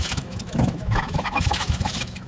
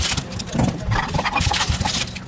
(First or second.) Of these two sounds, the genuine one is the second